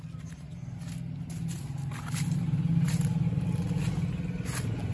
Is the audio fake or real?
real